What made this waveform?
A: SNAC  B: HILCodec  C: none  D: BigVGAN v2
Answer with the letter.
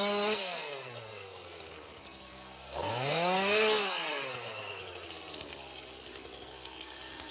A